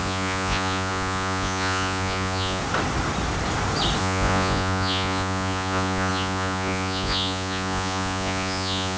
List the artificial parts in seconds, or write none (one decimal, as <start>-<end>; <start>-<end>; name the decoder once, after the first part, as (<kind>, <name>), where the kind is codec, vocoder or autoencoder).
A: 0.0-2.6 (vocoder, Vocos); 4.0-9.0